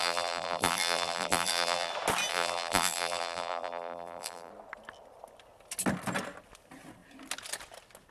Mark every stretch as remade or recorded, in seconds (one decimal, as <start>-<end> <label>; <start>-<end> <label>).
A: 0.0-1.9 remade; 1.9-2.3 recorded; 2.3-4.5 remade; 4.5-8.1 recorded